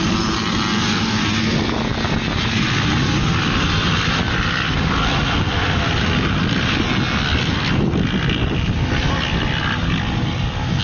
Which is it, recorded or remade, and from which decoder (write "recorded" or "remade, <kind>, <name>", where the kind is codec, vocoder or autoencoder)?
recorded